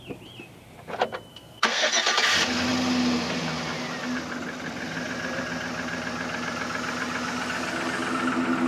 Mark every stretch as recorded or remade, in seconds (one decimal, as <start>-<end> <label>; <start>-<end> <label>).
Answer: 0.0-1.3 recorded; 1.3-1.9 remade; 1.9-8.7 recorded